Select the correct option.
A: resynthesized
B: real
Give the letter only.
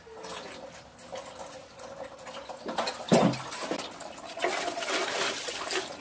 B